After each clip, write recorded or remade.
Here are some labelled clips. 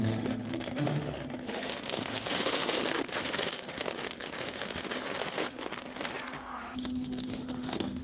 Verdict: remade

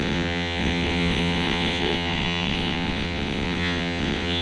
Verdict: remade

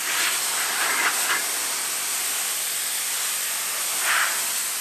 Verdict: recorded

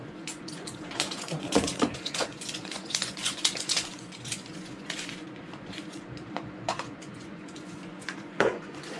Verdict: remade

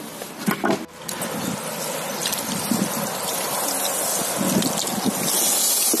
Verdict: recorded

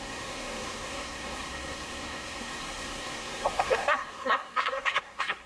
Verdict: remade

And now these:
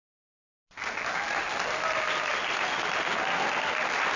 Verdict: recorded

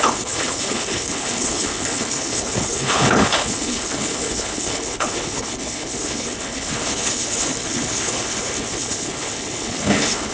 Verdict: remade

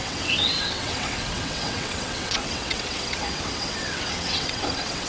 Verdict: remade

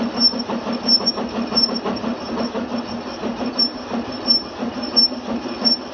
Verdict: recorded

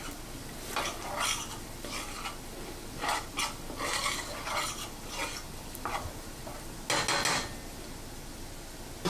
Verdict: recorded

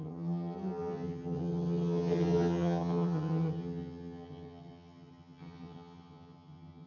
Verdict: remade